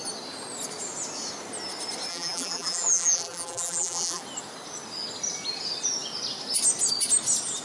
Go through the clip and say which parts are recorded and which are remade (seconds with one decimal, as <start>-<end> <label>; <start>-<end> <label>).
0.0-2.1 recorded; 2.1-4.2 remade; 4.2-7.6 recorded